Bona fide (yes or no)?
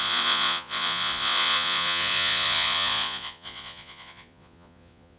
no